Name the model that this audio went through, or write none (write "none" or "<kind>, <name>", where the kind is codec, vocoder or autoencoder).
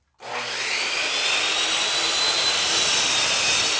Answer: none